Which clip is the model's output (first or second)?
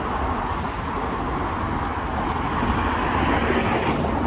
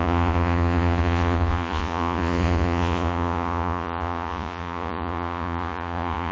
second